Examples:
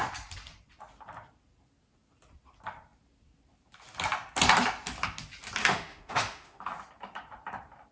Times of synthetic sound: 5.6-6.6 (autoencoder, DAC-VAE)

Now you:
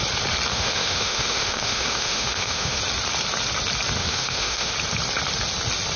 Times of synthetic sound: 0.5-2.8 (autoencoder, DAC-VAE); 4.0-4.7

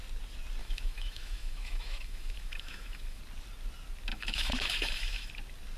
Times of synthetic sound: 0.6-3.2 (autoencoder, DAC-VAE); 4.1-5.3